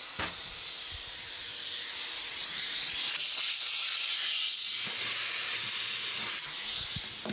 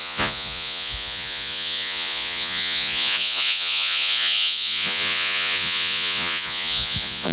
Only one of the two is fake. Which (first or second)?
second